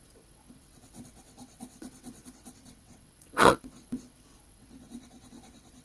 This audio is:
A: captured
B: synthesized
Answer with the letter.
B